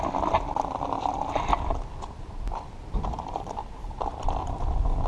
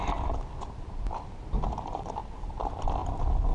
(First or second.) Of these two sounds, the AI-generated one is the first